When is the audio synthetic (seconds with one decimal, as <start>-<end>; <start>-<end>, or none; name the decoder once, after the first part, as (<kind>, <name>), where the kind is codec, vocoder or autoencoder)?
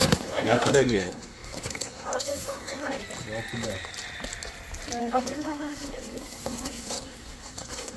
0.0-3.0 (codec, SNAC); 5.0-8.0